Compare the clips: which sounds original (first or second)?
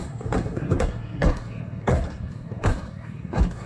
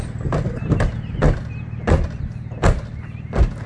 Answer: second